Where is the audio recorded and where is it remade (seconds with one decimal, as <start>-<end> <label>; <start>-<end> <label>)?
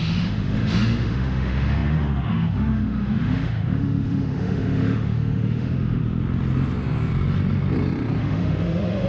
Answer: 0.0-6.0 remade; 6.0-8.2 recorded; 8.2-9.1 remade